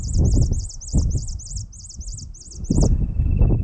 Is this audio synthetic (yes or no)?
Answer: no